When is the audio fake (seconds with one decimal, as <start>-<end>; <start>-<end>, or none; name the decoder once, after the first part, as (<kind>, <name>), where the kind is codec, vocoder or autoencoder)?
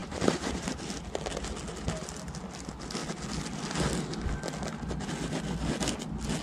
0.0-0.8 (vocoder, BigVGAN v2)